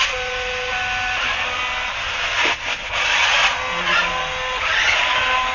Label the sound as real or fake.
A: real